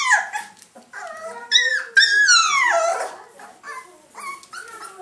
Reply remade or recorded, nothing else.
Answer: recorded